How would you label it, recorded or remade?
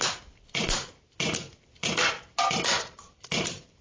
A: recorded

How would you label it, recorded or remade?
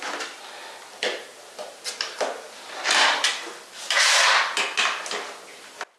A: recorded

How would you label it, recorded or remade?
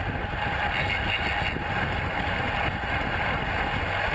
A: recorded